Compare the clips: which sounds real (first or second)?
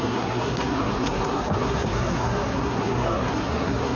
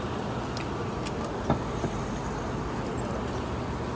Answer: second